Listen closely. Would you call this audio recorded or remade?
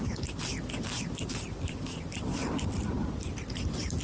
recorded